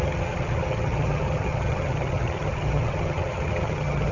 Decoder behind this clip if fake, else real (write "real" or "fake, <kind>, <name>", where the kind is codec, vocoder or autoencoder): fake, vocoder, HiFi-GAN